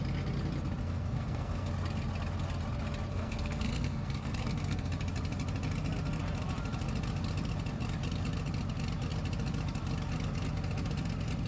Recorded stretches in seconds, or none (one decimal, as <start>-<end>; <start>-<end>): 0.0-0.8; 1.7-3.1; 4.9-11.5